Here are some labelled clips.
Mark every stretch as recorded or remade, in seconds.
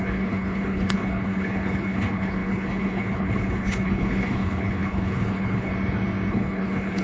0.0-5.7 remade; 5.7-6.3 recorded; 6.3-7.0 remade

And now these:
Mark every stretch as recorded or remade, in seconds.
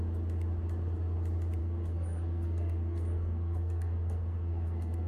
0.0-1.6 recorded; 1.6-5.1 remade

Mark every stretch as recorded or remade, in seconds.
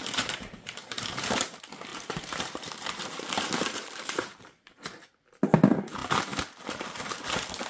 0.0-1.4 remade; 1.4-1.9 recorded; 1.9-5.0 remade; 5.0-7.7 recorded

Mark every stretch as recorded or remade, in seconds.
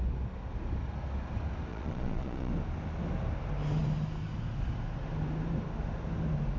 0.0-1.7 recorded; 1.7-2.5 remade; 2.5-6.6 recorded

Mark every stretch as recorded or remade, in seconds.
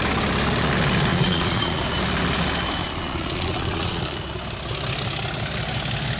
0.0-1.1 recorded; 1.1-1.8 remade; 1.8-2.8 recorded; 2.8-4.2 remade; 4.2-6.2 recorded